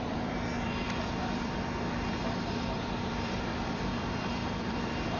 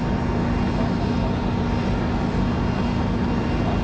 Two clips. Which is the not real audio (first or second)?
first